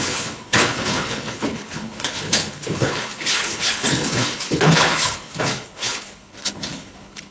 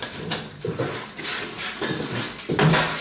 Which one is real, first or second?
second